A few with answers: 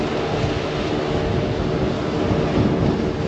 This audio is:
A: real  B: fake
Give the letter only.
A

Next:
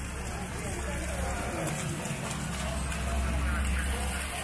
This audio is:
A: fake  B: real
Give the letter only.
B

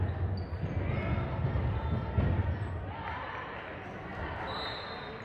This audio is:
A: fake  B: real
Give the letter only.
B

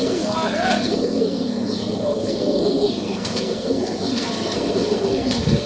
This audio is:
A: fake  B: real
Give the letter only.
A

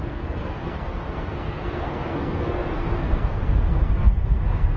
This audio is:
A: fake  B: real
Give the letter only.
A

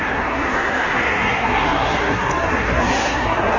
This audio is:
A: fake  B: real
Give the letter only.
A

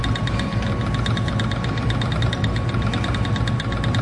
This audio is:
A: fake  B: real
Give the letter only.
B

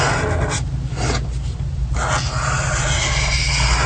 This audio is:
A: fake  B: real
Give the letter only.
B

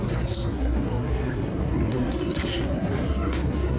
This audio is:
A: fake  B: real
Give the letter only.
A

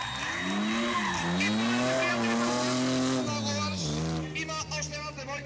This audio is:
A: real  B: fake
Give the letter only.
A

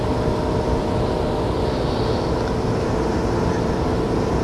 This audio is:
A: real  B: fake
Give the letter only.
A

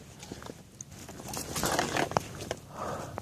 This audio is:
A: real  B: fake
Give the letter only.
A